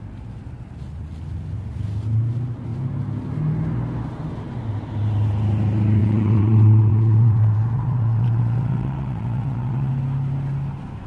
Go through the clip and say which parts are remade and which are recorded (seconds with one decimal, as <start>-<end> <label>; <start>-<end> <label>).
0.0-6.0 recorded; 6.0-9.9 remade; 9.9-11.1 recorded